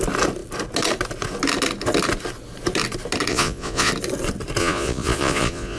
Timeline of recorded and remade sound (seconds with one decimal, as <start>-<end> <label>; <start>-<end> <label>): 0.0-3.3 recorded; 3.3-3.9 remade; 3.9-4.6 recorded; 4.6-5.8 remade